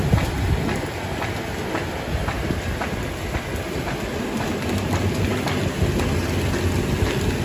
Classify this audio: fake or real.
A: real